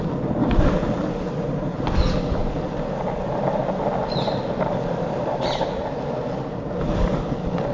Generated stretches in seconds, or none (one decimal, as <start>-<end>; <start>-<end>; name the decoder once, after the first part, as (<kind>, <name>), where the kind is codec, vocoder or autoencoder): none